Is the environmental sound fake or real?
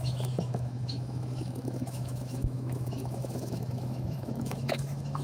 fake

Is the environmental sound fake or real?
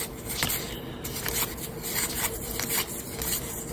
real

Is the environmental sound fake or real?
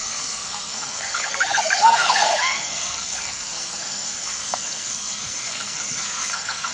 fake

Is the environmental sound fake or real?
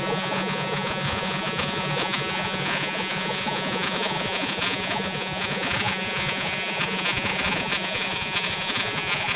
fake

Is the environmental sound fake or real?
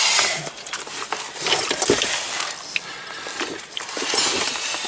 real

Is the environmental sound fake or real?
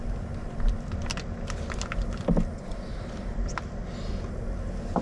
real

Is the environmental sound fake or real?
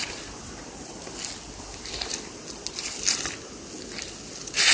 real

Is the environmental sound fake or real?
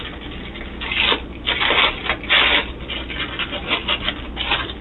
real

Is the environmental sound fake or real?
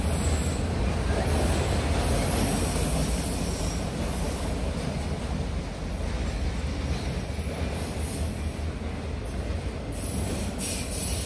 real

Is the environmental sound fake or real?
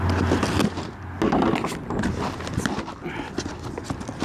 real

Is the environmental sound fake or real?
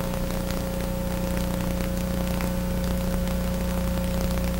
real